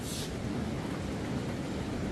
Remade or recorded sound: recorded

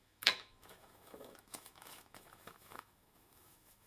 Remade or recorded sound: remade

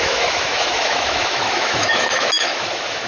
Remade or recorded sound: remade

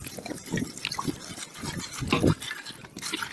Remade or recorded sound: recorded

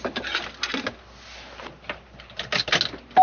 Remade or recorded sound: recorded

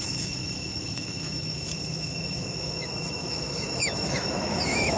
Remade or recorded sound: remade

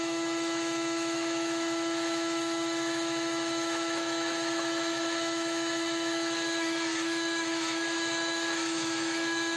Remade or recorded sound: remade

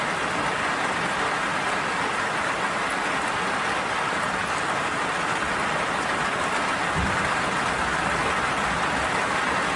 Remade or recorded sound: recorded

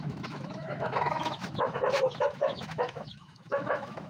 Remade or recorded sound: remade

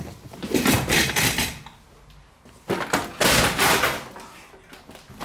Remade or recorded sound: recorded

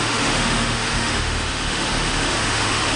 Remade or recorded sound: remade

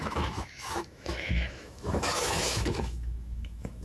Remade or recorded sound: remade